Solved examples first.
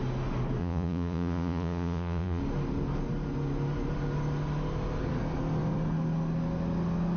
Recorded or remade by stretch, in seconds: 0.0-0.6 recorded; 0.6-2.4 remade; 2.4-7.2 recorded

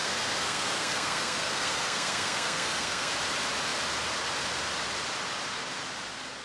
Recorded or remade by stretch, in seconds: 0.0-3.1 remade; 3.1-6.4 recorded

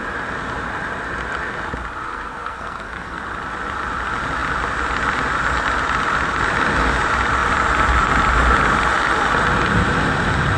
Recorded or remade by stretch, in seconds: 0.0-2.0 recorded; 2.0-3.2 remade; 3.2-10.6 recorded

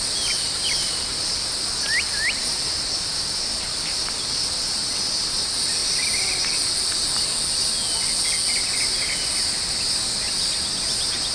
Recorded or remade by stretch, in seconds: 0.0-11.3 recorded

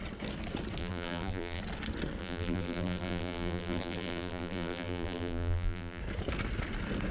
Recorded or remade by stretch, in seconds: 0.0-0.8 recorded; 0.8-1.6 remade; 1.6-2.2 recorded; 2.2-6.0 remade; 6.0-7.1 recorded

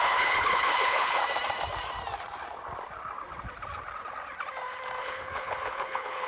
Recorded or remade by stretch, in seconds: 0.0-1.2 remade; 1.2-5.0 recorded; 5.0-6.3 remade

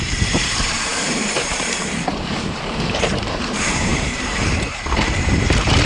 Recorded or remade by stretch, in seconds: 0.0-5.9 remade